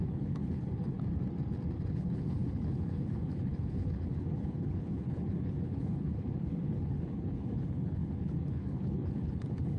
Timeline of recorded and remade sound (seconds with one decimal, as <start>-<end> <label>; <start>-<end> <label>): 0.0-1.0 remade; 1.0-1.9 recorded; 1.9-9.8 remade